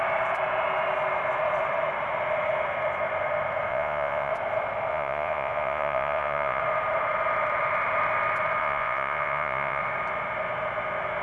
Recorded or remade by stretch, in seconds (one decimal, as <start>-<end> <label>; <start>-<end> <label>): 0.0-3.7 recorded; 3.7-4.3 remade; 4.3-4.9 recorded; 4.9-6.6 remade; 6.6-8.6 recorded; 8.6-9.8 remade; 9.8-11.2 recorded